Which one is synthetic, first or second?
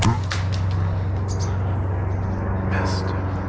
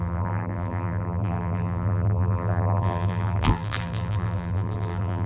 second